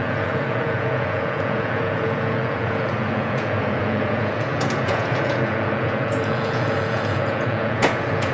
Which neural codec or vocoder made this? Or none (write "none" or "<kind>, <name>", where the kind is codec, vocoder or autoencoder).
vocoder, Vocos